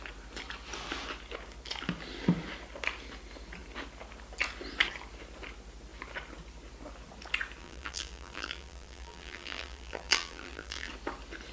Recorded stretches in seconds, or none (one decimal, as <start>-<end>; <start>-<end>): 0.0-7.6; 10.9-11.5